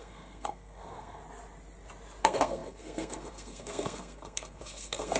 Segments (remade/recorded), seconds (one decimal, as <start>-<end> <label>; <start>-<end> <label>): 0.0-1.2 remade; 1.2-2.2 recorded; 2.2-5.2 remade

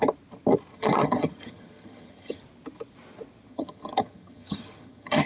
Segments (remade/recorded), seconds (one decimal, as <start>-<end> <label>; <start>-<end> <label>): 0.0-0.7 recorded; 0.7-2.4 remade; 2.4-3.5 recorded; 3.5-5.3 remade

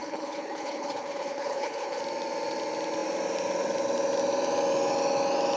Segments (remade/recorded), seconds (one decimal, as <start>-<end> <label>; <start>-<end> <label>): 0.0-2.0 remade; 2.0-5.6 recorded

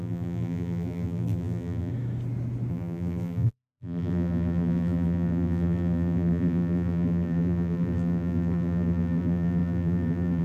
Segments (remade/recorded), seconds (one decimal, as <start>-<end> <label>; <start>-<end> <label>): 0.0-1.9 remade; 1.9-2.7 recorded; 2.7-10.4 remade